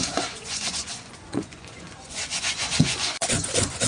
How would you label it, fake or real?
fake